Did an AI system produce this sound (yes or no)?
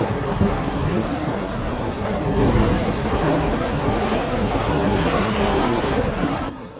yes